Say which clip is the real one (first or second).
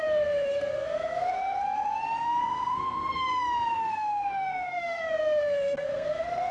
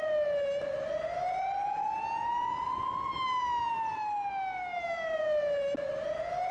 second